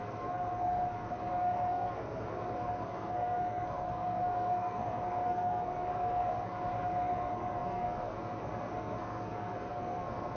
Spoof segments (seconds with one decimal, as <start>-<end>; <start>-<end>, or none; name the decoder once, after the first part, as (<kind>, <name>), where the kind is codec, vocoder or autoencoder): 0.0-10.4 (codec, SNAC)